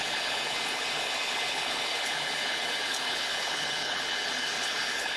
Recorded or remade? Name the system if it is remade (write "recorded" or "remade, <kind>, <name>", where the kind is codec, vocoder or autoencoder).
remade, codec, HILCodec